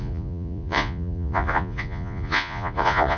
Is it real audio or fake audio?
fake